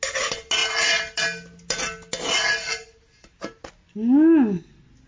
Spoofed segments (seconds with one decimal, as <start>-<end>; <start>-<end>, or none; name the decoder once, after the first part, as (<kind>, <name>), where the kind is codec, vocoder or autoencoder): none